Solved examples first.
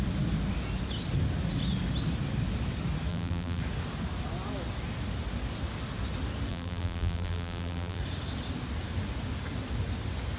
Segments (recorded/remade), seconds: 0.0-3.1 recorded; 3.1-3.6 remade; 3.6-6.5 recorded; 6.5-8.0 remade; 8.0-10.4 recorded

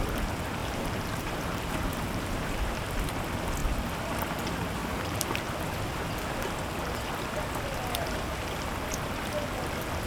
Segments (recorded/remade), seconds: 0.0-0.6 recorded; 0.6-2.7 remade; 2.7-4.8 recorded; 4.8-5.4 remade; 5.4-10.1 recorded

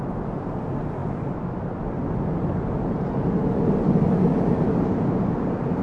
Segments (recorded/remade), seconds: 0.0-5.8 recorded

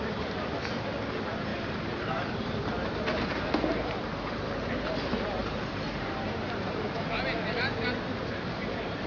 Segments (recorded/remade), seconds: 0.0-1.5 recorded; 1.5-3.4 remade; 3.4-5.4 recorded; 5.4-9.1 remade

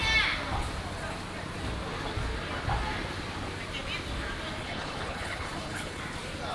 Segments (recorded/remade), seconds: 0.0-4.6 recorded; 4.6-6.0 remade; 6.0-6.5 recorded